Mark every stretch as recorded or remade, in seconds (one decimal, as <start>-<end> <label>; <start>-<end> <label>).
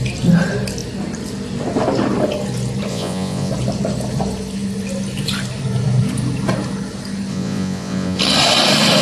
0.0-2.9 recorded; 2.9-3.5 remade; 3.5-7.3 recorded; 7.3-8.2 remade; 8.2-9.0 recorded